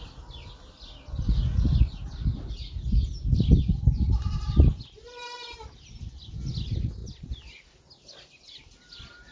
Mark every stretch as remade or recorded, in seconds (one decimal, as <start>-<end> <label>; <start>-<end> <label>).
0.0-9.3 recorded